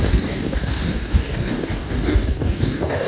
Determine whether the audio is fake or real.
fake